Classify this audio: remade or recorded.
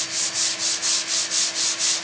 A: recorded